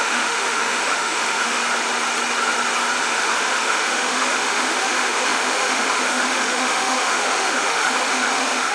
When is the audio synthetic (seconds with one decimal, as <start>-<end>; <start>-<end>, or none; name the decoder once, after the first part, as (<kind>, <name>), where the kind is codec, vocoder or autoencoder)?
0.0-1.6 (autoencoder, DAC-VAE); 3.0-8.7